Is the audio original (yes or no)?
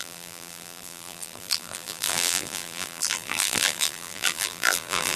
no